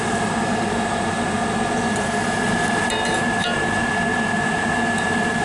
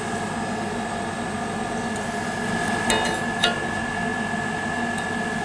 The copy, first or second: first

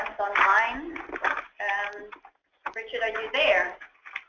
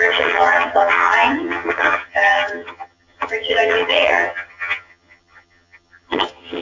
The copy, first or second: second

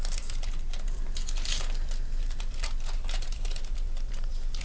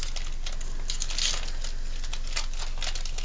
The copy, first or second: first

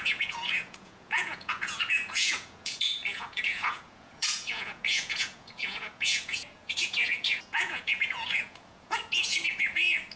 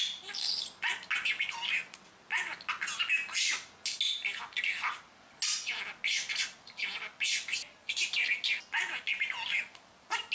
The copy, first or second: first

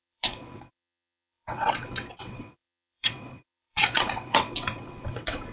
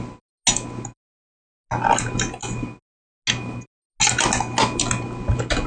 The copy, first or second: first